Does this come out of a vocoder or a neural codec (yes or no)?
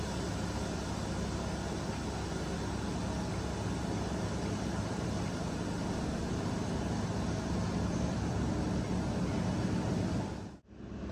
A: no